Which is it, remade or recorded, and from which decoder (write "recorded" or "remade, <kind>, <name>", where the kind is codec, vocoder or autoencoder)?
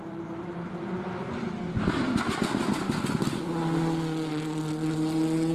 recorded